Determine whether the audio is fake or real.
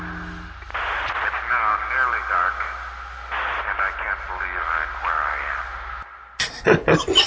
real